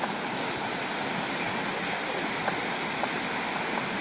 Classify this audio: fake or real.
real